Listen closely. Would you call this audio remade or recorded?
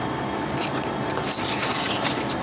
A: recorded